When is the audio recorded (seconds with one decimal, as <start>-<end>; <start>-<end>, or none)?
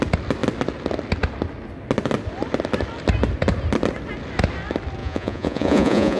0.0-5.0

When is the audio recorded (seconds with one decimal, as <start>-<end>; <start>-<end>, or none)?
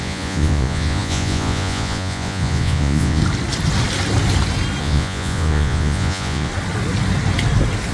3.2-4.8; 6.5-7.9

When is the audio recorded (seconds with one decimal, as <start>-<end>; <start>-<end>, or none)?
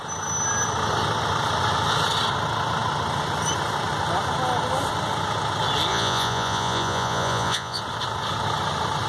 0.0-5.9; 7.8-9.1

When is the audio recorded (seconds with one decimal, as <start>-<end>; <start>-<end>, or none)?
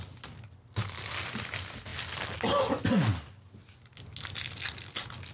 0.0-5.3